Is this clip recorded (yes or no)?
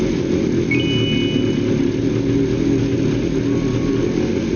yes